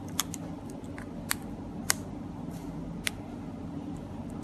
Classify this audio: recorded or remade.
recorded